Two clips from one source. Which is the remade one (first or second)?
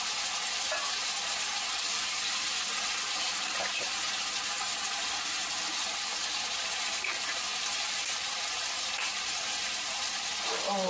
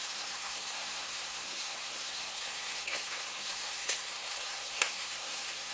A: second